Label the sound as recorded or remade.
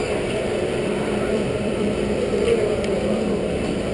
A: remade